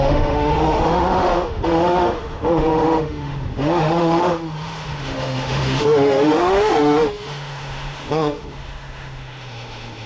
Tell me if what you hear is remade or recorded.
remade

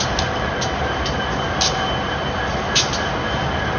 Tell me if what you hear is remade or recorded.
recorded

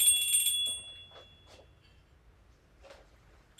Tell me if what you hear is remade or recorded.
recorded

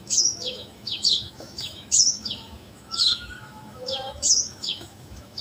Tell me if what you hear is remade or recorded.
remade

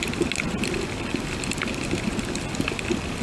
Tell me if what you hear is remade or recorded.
recorded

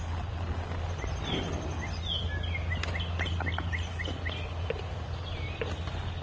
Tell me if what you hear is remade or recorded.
recorded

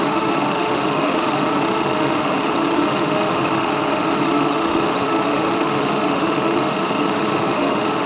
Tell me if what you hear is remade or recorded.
remade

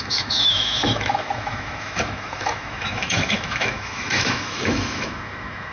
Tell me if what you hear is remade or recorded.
remade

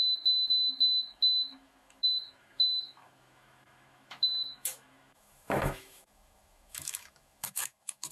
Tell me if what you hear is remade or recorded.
remade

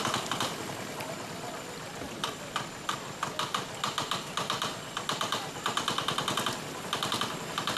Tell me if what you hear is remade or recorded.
recorded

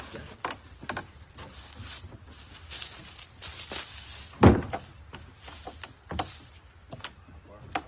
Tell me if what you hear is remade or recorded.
recorded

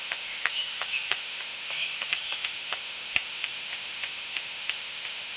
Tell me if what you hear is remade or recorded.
remade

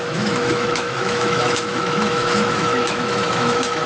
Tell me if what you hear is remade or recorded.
remade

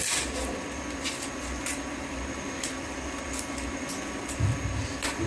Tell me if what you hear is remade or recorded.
recorded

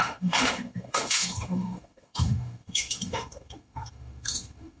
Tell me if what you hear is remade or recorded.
remade